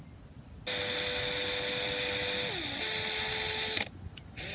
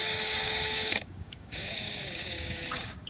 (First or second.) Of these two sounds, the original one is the first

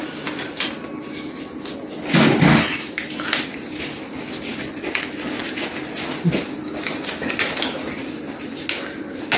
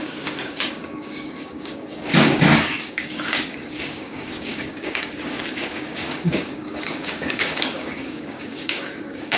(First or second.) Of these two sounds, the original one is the first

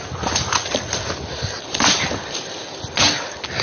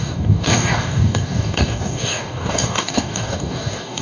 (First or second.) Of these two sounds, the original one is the first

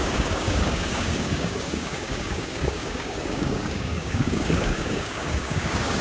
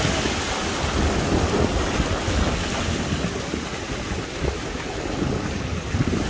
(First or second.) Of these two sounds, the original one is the second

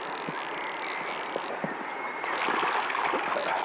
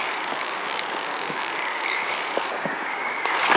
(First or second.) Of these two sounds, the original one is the first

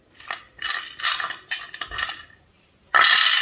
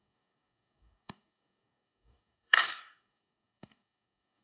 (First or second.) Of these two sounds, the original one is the first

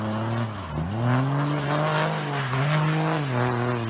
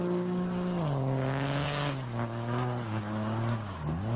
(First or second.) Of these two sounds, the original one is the first